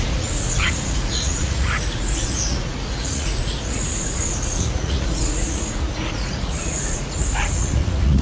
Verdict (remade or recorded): remade